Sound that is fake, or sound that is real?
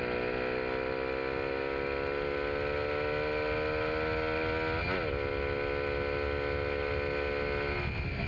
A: real